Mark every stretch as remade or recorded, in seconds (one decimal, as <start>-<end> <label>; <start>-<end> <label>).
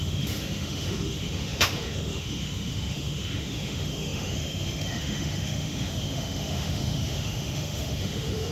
0.0-8.5 remade